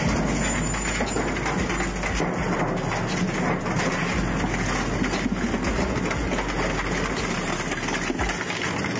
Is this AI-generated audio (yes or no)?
no